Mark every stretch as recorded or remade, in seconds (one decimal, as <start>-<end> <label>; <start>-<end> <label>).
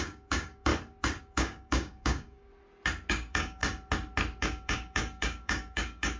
0.0-0.7 remade; 0.7-1.2 recorded; 1.2-2.5 remade; 2.5-3.1 recorded; 3.1-3.6 remade; 3.6-4.4 recorded; 4.4-6.2 remade